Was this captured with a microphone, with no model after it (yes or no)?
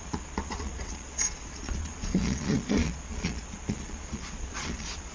no